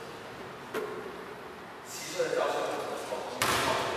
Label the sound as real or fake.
real